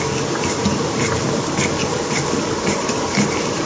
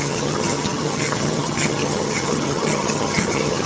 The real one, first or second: first